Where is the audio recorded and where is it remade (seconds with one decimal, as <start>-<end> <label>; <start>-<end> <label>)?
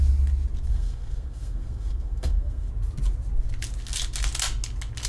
0.0-0.7 recorded; 0.7-2.7 remade; 2.7-5.1 recorded